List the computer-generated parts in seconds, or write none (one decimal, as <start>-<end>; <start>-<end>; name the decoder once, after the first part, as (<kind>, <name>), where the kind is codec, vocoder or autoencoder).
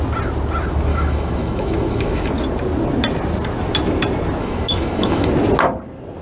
0.9-2.3 (autoencoder, DAC-VAE); 4.4-5.3